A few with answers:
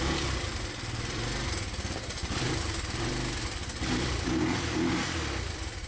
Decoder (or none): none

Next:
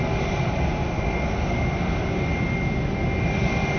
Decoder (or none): none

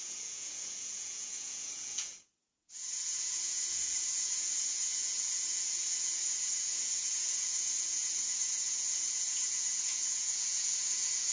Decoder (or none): vocoder, Vocos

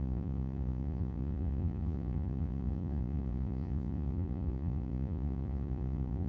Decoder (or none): vocoder, Vocos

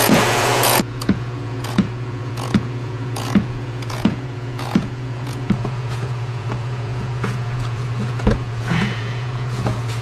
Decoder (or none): vocoder, Vocos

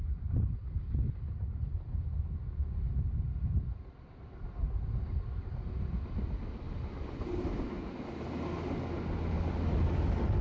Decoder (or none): none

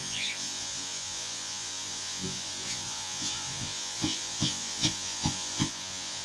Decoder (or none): vocoder, Vocos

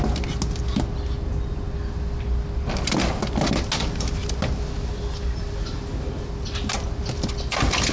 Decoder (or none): none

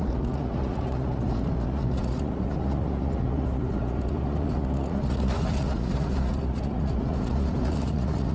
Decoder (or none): vocoder, Vocos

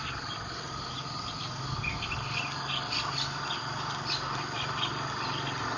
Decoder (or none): none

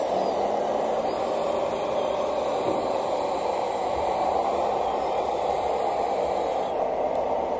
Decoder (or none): none